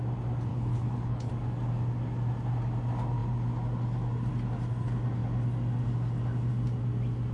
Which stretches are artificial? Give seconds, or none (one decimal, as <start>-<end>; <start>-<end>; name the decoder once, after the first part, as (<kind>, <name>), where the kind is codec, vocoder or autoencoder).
0.5-1.3 (codec, HILCodec)